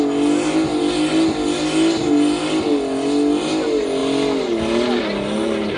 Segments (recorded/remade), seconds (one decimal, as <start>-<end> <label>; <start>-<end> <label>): 0.0-5.8 recorded